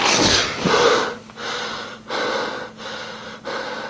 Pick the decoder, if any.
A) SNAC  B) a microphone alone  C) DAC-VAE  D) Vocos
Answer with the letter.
B